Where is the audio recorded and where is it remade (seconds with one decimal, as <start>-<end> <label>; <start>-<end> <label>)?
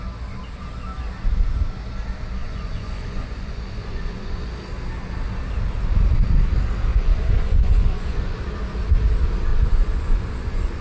0.0-2.4 recorded; 2.4-4.5 remade; 4.5-6.9 recorded; 6.9-8.4 remade; 8.4-9.5 recorded; 9.5-10.8 remade